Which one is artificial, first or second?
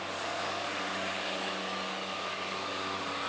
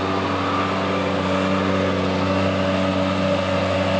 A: first